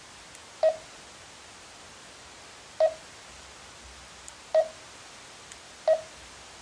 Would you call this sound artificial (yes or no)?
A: no